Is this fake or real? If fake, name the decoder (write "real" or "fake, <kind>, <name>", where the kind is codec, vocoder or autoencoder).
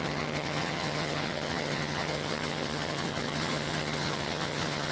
fake, vocoder, HiFi-GAN